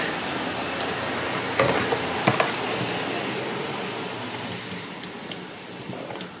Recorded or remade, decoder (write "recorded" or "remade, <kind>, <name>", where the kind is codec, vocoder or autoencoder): recorded